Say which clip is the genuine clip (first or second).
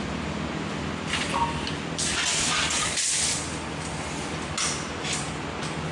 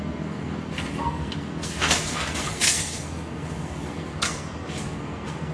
first